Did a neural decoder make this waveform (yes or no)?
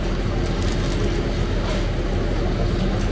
no